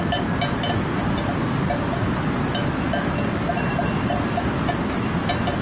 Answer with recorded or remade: recorded